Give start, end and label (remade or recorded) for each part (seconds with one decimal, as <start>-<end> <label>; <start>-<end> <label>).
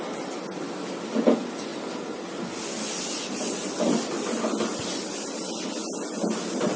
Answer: 0.0-6.8 recorded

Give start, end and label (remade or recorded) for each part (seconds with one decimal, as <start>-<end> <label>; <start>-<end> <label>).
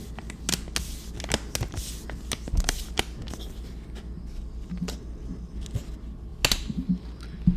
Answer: 0.0-7.6 recorded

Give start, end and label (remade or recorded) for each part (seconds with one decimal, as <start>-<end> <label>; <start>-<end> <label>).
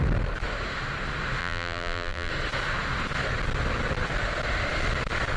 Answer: 0.0-1.4 recorded; 1.4-2.3 remade; 2.3-5.4 recorded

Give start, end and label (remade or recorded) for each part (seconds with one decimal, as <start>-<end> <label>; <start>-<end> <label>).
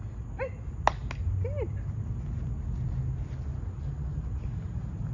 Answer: 0.0-5.1 recorded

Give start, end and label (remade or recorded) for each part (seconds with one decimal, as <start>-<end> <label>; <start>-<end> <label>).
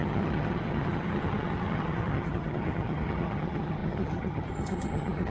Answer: 0.0-5.3 remade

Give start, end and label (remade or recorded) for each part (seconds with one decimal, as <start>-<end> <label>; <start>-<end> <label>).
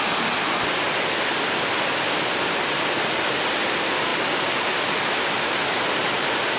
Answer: 0.0-6.6 recorded